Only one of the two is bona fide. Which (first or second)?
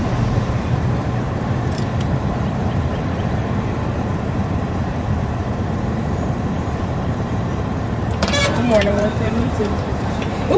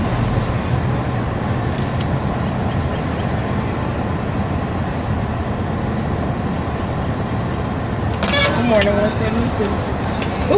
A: second